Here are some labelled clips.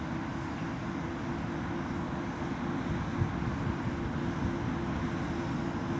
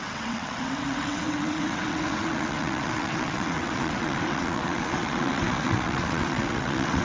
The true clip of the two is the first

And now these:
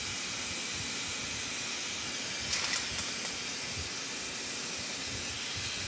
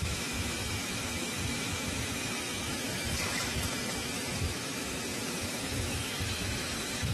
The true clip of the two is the first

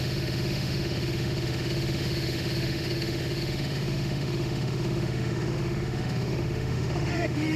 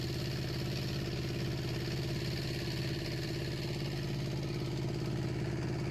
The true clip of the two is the second